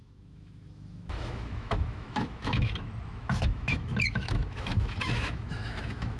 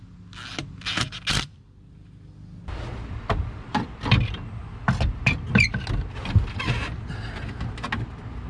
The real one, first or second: second